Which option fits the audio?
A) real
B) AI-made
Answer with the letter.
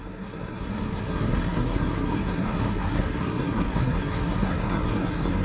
B